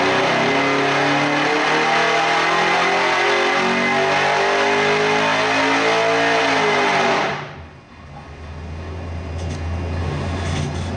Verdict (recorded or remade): recorded